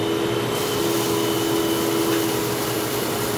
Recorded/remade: recorded